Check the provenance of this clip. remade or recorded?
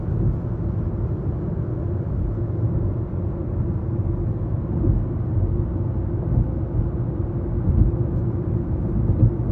recorded